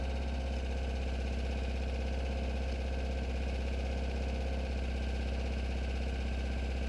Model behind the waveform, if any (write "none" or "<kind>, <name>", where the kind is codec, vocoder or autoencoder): none